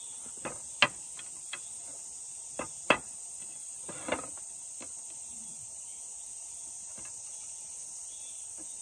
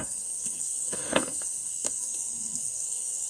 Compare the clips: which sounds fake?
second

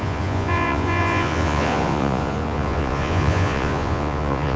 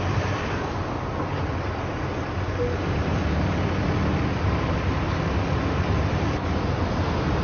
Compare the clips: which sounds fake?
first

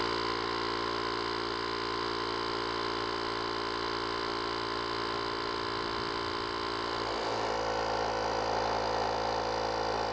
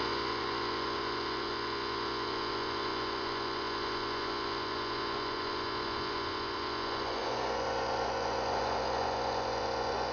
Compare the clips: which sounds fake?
second